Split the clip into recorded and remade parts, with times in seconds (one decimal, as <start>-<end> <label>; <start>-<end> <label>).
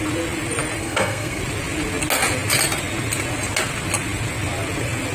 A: 0.0-0.8 recorded; 0.8-1.4 remade; 1.4-5.1 recorded